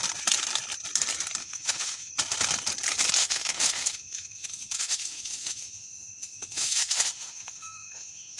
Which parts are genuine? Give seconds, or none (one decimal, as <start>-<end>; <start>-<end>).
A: 0.0-1.4; 2.1-3.2